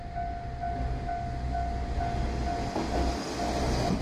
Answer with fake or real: real